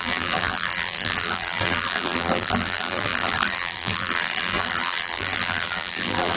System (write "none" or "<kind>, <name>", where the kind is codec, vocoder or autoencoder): vocoder, BigVGAN v2